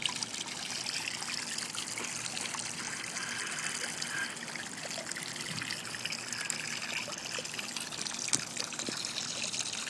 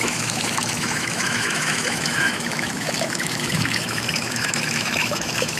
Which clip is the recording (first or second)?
first